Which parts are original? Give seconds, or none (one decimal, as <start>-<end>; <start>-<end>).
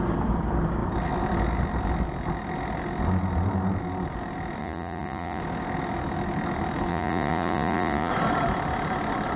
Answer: 0.0-4.6; 5.4-6.9; 8.1-9.4